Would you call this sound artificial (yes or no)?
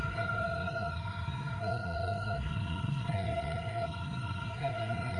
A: yes